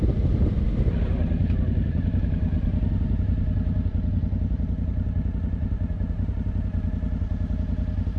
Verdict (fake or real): real